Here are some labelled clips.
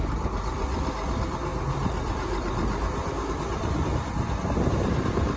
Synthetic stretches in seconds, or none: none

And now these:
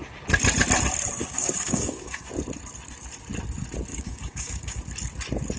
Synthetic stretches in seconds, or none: 1.2-2.3 (codec, DAC); 3.9-4.8

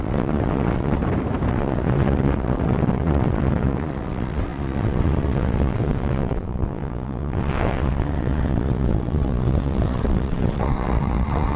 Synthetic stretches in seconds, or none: 0.0-1.0 (vocoder, WaveNeXt); 1.5-11.6

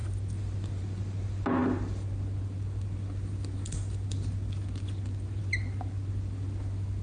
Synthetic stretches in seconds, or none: none

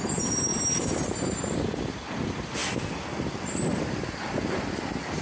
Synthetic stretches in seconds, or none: none

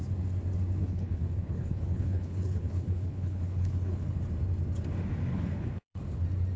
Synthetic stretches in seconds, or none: 0.8-4.2 (codec, HILCodec); 5.3-6.0

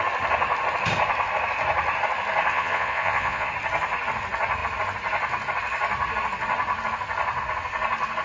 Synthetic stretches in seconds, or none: 2.5-3.5 (vocoder, Vocos)

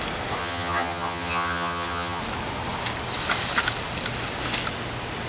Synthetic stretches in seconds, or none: 0.4-2.2 (vocoder, HiFi-GAN)